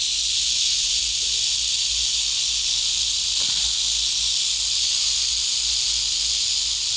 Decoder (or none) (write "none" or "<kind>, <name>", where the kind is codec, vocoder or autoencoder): none